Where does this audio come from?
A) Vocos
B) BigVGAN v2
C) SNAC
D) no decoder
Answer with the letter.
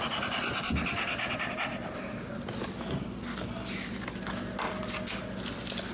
D